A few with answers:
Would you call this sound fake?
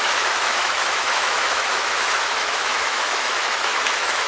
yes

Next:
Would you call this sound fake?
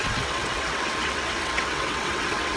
yes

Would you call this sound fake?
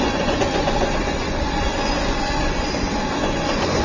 yes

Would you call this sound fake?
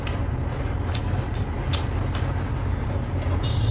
no